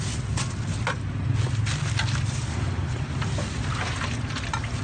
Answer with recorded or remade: recorded